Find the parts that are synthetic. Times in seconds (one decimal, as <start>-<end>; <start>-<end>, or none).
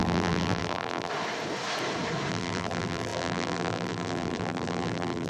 0.0-1.1; 2.3-5.3